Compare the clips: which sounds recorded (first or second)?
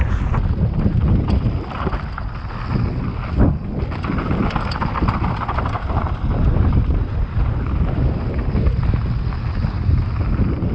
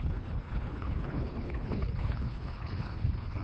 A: first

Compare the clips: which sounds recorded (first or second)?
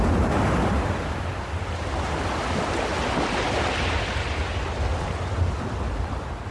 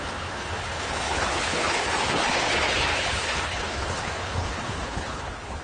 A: first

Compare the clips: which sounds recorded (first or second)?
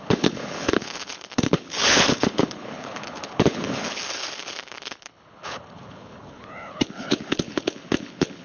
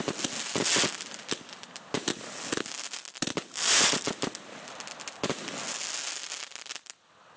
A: second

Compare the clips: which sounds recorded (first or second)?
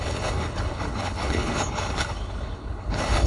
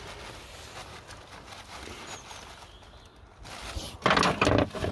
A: second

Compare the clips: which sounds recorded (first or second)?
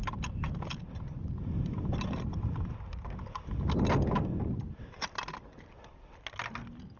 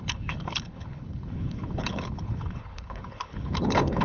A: first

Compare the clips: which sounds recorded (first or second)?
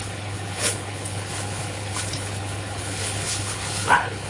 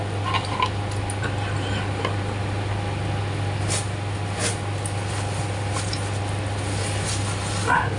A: second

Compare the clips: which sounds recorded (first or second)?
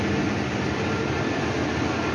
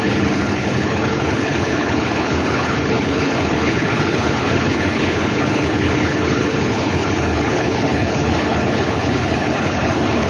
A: first